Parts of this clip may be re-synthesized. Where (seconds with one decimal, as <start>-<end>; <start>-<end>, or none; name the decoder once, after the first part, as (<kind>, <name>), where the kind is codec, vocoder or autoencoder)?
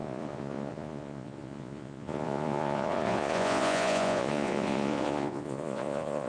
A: 0.0-6.3 (vocoder, Vocos)